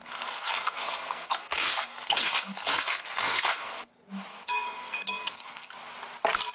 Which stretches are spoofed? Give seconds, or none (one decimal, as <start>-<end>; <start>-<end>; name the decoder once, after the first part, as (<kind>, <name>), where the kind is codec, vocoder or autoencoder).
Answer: 0.0-3.9 (codec, SNAC); 4.3-5.7